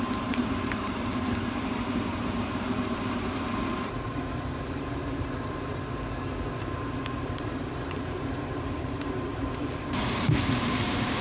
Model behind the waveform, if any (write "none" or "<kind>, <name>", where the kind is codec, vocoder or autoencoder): vocoder, BigVGAN v2